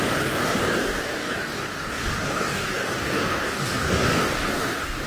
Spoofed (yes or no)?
yes